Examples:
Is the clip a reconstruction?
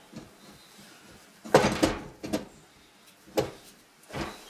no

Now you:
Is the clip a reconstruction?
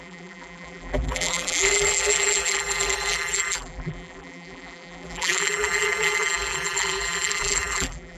yes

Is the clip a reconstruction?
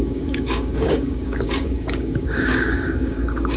yes